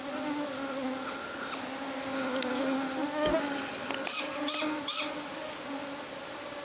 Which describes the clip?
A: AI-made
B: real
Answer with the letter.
B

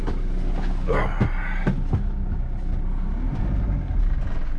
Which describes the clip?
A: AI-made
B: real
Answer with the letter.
B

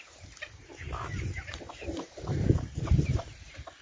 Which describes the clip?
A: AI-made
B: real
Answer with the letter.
A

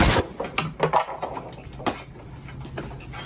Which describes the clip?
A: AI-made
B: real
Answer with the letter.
B